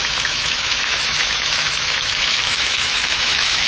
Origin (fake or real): fake